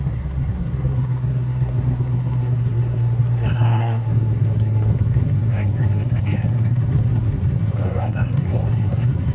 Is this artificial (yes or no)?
yes